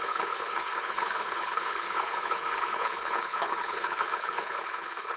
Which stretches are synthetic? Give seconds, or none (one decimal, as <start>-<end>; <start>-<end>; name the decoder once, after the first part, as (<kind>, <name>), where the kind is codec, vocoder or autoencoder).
0.0-5.2 (codec, HILCodec)